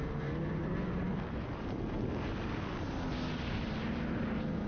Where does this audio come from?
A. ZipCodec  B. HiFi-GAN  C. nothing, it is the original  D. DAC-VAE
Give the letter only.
C